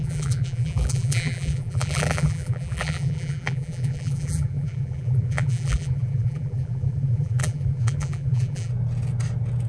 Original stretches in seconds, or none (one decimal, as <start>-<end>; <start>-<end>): 8.7-9.7